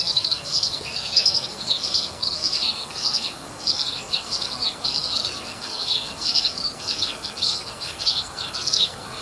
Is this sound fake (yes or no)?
yes